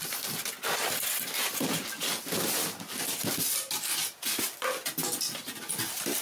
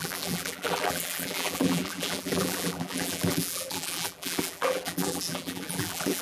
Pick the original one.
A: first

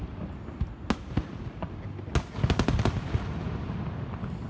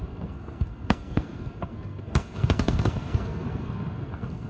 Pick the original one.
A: first